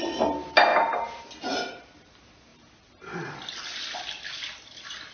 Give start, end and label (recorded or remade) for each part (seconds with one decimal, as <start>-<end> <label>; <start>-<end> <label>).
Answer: 0.0-0.7 recorded; 0.7-1.2 remade; 1.2-2.5 recorded; 2.5-3.5 remade; 3.5-5.1 recorded